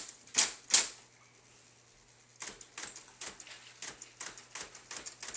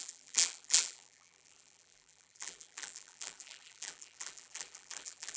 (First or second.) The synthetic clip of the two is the second